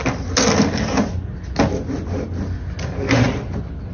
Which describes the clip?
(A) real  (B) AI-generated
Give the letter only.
A